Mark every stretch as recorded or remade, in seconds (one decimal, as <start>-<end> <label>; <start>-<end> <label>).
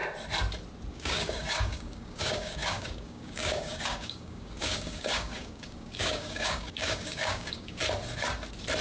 0.0-0.9 recorded; 0.9-7.8 remade; 7.8-8.8 recorded